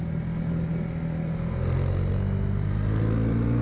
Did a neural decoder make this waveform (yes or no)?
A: no